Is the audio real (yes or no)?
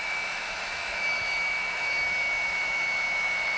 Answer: no